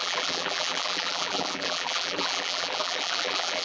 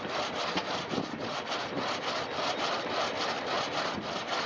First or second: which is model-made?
first